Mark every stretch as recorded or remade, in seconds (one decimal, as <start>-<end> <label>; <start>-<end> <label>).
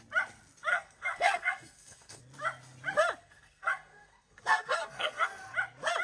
0.0-0.7 recorded; 0.7-2.2 remade; 2.2-3.2 recorded; 3.2-5.4 remade; 5.4-6.0 recorded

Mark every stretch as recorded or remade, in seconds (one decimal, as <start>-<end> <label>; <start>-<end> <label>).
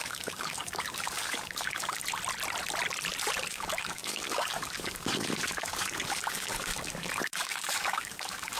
0.0-2.0 remade; 2.0-3.5 recorded; 3.5-8.6 remade